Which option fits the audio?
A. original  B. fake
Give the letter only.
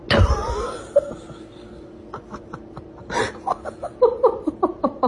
A